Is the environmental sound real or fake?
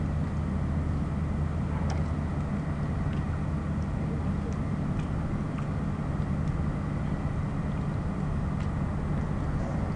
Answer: real